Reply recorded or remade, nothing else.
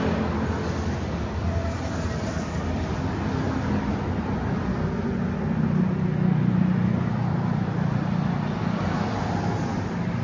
recorded